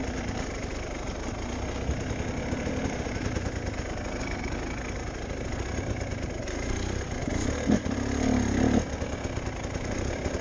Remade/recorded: recorded